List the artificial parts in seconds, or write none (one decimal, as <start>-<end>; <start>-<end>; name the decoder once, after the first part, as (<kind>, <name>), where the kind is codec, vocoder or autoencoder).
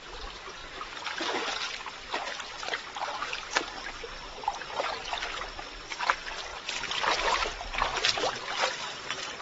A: 0.6-4.9 (vocoder, BigVGAN v2)